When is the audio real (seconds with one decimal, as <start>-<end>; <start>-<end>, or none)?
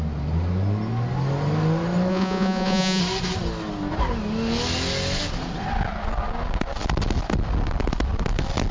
0.0-2.1; 3.0-8.7